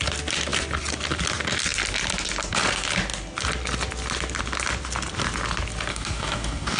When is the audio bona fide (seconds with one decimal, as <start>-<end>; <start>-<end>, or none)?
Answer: 0.0-5.9